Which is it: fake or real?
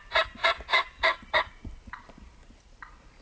real